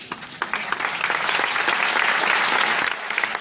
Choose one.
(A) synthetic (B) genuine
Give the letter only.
B